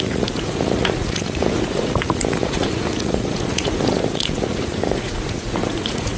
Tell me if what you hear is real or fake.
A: fake